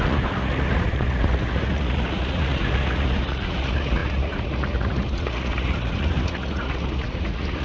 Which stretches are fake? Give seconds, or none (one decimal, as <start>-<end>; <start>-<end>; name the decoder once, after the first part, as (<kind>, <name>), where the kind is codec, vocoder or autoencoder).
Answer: 0.0-7.6 (vocoder, Vocos)